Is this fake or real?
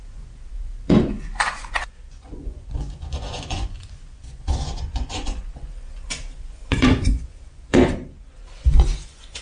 fake